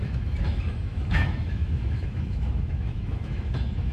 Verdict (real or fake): fake